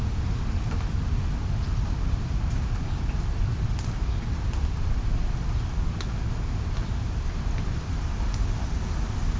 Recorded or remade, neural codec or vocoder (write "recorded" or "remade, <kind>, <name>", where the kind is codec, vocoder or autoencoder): recorded